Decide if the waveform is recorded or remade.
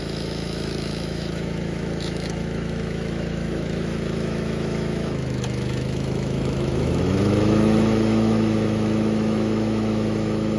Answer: remade